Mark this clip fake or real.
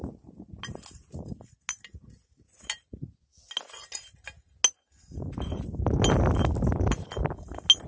real